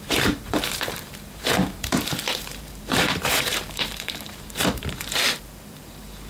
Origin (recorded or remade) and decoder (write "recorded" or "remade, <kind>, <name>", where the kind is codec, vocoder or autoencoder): remade, vocoder, BigVGAN v2